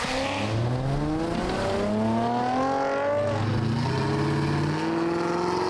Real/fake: real